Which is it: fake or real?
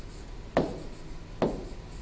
real